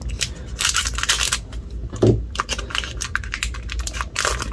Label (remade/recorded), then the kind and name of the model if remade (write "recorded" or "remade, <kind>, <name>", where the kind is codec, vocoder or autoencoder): recorded